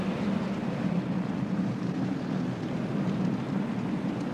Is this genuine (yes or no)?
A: yes